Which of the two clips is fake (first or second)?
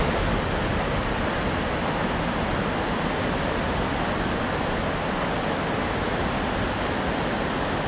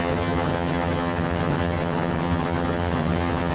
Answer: second